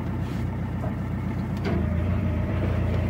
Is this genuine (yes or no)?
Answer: no